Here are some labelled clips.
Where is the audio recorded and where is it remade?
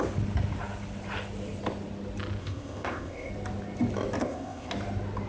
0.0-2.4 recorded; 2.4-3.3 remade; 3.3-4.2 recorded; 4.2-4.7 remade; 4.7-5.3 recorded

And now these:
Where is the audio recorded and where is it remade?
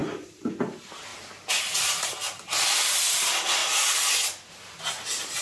0.0-0.5 remade; 0.5-5.4 recorded